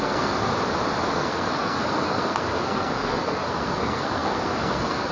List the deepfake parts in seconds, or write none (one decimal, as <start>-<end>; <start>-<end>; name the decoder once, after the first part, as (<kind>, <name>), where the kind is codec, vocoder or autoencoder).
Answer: 0.0-0.5 (codec, SNAC); 1.1-5.1